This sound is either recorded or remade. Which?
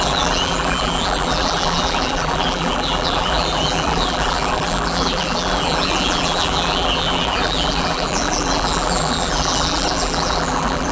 remade